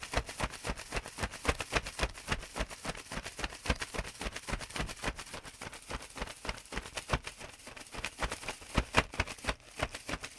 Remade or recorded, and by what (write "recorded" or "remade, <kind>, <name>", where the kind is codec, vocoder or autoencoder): recorded